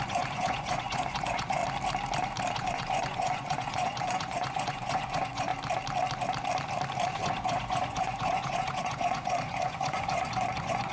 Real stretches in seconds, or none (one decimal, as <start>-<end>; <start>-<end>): 1.6-2.5; 5.5-7.2